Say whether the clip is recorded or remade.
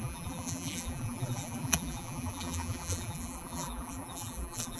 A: remade